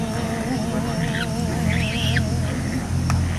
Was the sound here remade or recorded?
recorded